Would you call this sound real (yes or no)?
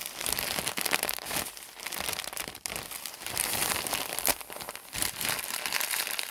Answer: no